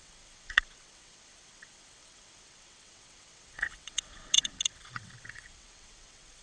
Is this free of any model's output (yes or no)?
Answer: no